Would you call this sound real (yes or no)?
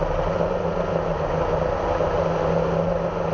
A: yes